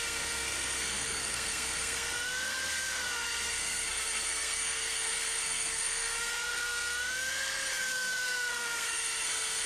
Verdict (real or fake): fake